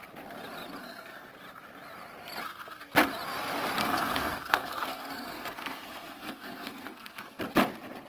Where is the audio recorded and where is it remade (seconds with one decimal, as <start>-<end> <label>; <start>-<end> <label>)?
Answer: 0.0-0.8 recorded; 0.8-1.3 remade; 1.3-3.8 recorded; 3.8-7.4 remade; 7.4-8.1 recorded